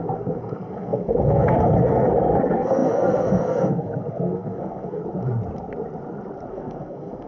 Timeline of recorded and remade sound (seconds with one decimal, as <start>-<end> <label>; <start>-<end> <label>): 0.0-5.0 remade; 5.0-6.5 recorded; 6.5-7.3 remade